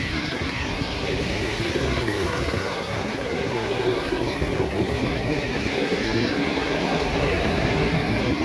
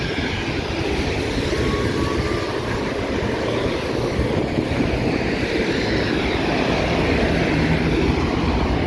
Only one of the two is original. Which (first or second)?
second